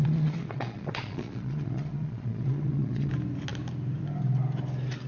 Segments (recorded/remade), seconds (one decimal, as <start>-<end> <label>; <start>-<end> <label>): 0.0-3.1 remade; 3.1-5.1 recorded